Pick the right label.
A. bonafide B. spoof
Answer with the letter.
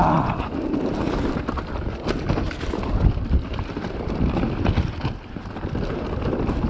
A